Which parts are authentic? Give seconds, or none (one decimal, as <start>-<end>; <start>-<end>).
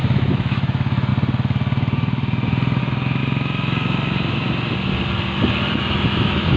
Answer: 1.1-2.8; 3.2-5.7